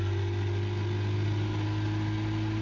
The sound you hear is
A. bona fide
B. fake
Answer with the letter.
A